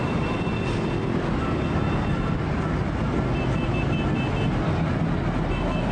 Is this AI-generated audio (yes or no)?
no